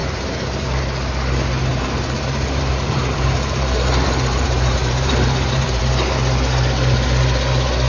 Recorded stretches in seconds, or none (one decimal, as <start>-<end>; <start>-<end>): 0.8-1.7; 5.8-7.9

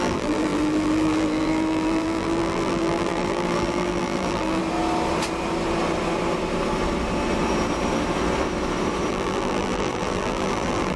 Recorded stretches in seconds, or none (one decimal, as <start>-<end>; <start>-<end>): 4.6-9.1